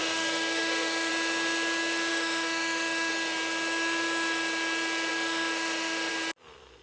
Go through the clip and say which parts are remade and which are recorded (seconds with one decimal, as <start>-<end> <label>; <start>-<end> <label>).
0.0-1.1 remade; 1.1-2.1 recorded; 2.1-3.1 remade; 3.1-5.1 recorded; 5.1-6.1 remade; 6.1-6.8 recorded